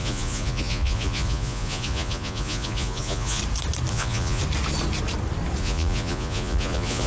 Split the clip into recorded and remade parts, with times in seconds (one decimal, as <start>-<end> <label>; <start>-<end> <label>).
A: 0.0-3.4 remade; 3.4-3.9 recorded; 3.9-4.4 remade; 4.4-5.6 recorded; 5.6-7.1 remade